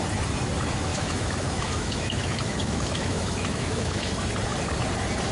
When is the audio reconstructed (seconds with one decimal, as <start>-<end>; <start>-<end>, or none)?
0.9-4.1